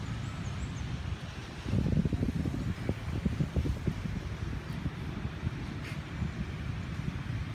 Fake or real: real